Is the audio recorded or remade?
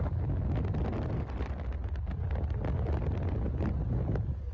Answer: recorded